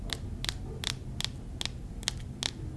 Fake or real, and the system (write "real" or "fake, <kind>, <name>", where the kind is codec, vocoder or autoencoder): real